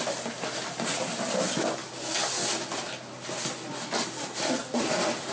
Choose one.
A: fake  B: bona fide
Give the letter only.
B